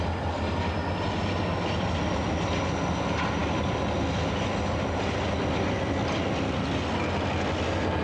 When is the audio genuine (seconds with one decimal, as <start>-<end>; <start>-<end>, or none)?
0.0-8.0